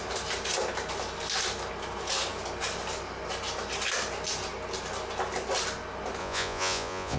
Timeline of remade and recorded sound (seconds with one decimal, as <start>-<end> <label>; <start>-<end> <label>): 0.0-6.2 recorded; 6.2-7.2 remade

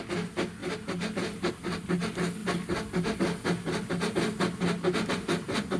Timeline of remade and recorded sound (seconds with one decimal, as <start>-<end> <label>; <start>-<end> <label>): 0.0-5.8 recorded

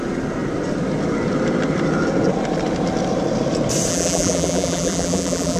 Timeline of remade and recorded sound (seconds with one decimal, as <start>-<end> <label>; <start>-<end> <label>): 0.0-3.9 recorded; 3.9-5.6 remade